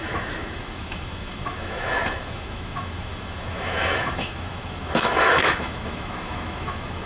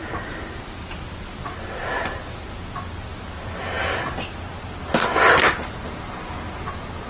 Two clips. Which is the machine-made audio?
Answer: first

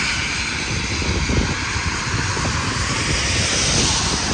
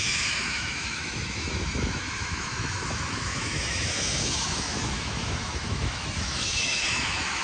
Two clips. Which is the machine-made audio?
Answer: second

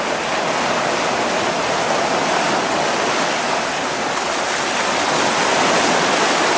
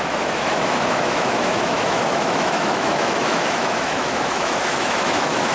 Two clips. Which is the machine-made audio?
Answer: second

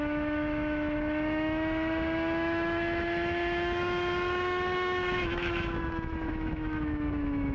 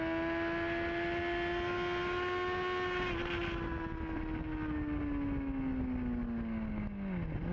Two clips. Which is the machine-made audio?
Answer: first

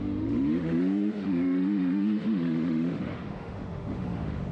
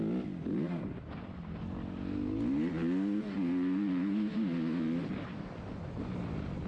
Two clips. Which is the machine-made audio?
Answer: first